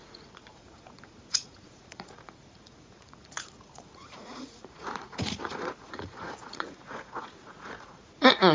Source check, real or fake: fake